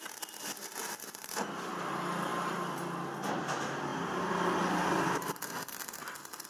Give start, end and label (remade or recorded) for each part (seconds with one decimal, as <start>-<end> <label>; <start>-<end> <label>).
0.0-6.5 recorded

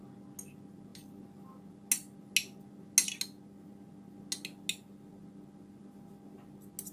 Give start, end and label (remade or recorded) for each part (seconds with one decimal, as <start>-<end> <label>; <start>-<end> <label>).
0.0-6.9 recorded